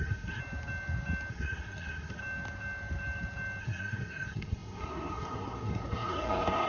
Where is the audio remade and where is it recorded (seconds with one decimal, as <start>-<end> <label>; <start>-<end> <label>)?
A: 0.0-0.4 remade; 0.4-1.3 recorded; 1.3-2.2 remade; 2.2-3.6 recorded; 3.6-6.7 remade